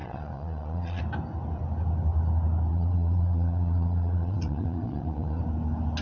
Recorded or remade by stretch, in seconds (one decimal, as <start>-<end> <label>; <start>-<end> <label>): 0.0-1.0 remade; 1.0-2.7 recorded; 2.7-5.4 remade; 5.4-6.0 recorded